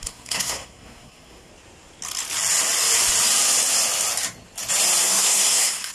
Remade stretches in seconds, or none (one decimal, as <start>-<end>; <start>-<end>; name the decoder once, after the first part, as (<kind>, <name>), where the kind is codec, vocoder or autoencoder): 0.0-1.5 (codec, SNAC); 5.0-5.9

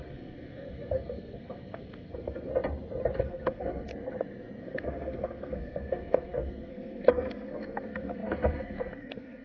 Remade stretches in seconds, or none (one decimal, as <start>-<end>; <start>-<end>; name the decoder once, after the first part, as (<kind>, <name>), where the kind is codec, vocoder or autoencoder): 0.0-2.5 (codec, SNAC); 3.2-3.9; 4.6-9.4

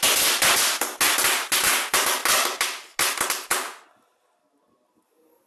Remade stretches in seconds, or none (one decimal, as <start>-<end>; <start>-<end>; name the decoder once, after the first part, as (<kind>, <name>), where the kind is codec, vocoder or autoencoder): none